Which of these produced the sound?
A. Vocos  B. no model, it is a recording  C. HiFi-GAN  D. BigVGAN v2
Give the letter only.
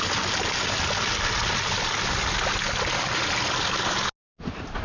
B